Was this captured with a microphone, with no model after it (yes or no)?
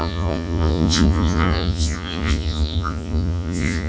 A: no